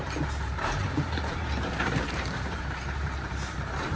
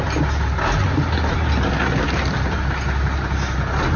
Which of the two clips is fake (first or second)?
first